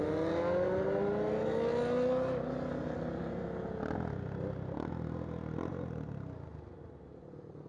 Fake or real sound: real